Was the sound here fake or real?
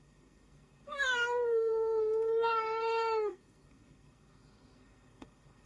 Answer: fake